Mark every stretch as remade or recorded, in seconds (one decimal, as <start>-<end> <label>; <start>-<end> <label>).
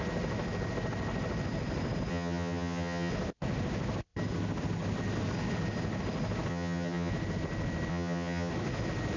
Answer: 0.0-2.1 recorded; 2.1-3.1 remade; 3.1-6.5 recorded; 6.5-7.1 remade; 7.1-7.9 recorded; 7.9-8.5 remade; 8.5-9.2 recorded